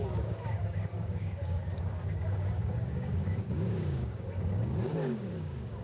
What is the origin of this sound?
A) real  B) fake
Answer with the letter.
B